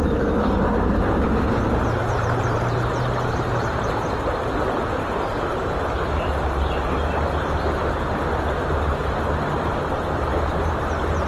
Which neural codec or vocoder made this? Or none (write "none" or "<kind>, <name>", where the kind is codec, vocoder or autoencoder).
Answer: vocoder, BigVGAN v2